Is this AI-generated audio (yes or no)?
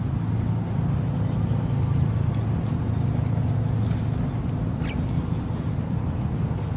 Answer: no